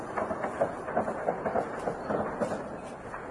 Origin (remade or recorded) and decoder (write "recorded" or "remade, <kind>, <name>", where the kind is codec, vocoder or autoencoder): recorded